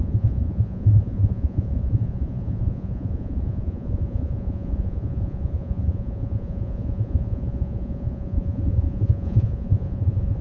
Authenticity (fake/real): fake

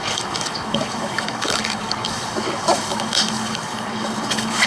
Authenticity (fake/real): fake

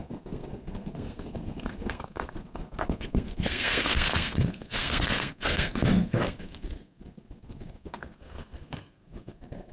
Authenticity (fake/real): fake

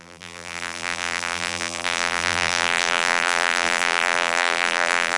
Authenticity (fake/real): fake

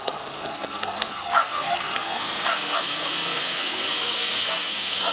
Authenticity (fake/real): fake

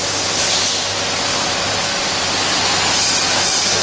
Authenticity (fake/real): real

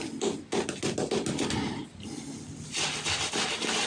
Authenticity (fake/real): real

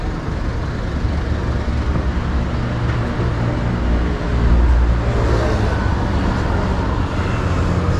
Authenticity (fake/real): real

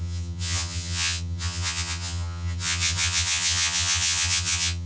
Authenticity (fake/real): fake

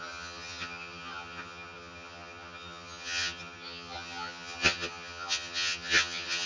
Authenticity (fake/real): fake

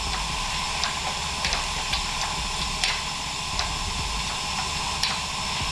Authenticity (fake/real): real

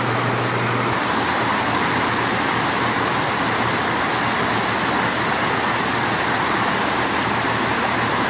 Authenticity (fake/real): real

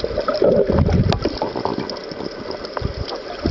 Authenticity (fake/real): real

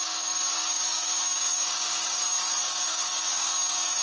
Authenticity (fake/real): fake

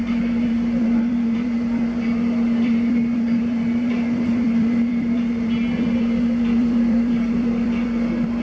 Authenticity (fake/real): fake